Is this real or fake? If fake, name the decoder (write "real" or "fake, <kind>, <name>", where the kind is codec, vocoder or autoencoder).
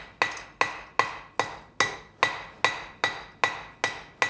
real